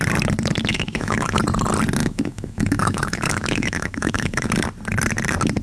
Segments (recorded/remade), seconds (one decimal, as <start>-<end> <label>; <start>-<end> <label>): 0.0-0.7 recorded; 0.7-1.4 remade; 1.4-2.0 recorded; 2.0-4.5 remade; 4.5-5.6 recorded